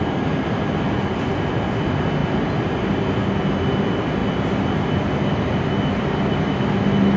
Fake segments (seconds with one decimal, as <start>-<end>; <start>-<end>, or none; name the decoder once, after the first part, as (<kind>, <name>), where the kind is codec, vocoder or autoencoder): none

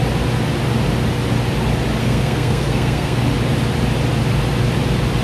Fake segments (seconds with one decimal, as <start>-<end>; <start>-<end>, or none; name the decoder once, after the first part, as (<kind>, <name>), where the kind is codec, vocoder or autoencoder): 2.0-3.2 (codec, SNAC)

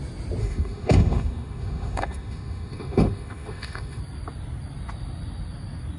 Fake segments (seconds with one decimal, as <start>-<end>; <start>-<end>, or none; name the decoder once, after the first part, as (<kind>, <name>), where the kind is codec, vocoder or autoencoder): 0.4-4.0 (autoencoder, DAC-VAE)